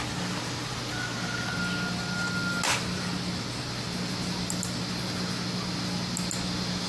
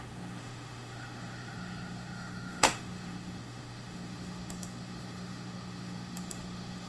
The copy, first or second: second